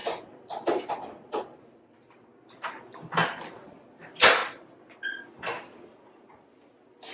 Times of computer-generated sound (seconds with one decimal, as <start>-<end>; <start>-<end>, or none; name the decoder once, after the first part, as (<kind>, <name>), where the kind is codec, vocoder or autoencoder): 0.0-2.3 (vocoder, BigVGAN v2); 3.4-4.4